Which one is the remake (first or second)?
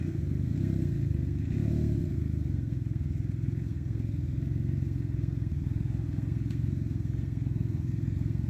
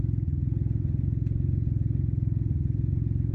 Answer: first